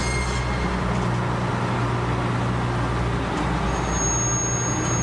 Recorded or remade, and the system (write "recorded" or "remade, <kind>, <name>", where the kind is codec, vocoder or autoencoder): recorded